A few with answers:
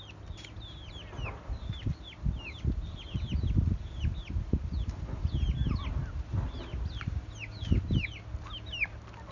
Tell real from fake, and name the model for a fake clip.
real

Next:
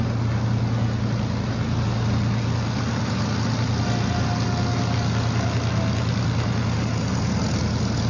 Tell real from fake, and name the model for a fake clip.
real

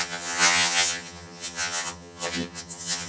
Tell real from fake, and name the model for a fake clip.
fake, vocoder, HiFi-GAN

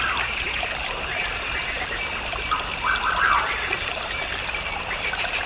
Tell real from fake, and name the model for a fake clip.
real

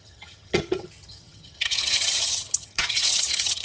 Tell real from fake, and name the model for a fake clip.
fake, vocoder, HiFi-GAN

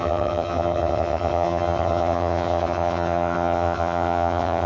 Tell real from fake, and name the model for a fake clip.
fake, vocoder, HiFi-GAN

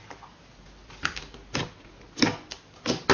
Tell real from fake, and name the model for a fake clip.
real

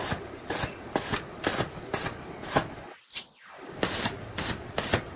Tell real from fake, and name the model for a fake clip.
real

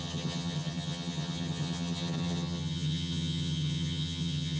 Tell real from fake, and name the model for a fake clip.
fake, vocoder, HiFi-GAN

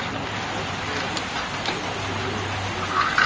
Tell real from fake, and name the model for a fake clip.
real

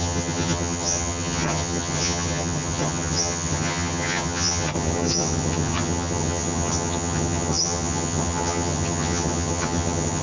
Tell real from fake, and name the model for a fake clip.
fake, vocoder, HiFi-GAN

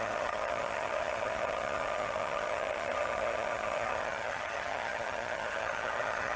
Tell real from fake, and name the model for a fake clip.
fake, vocoder, HiFi-GAN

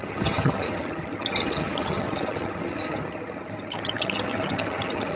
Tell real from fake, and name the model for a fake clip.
fake, vocoder, HiFi-GAN